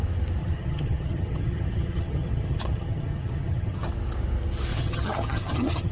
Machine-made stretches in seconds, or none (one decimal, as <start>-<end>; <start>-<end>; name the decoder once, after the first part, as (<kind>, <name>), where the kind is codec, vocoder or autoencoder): 0.4-3.9 (vocoder, HiFi-GAN); 4.7-5.9